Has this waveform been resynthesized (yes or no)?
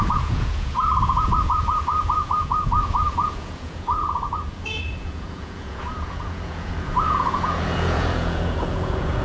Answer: yes